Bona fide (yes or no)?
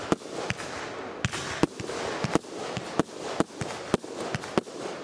yes